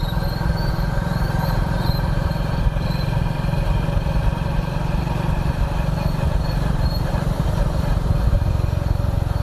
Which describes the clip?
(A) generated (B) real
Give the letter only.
A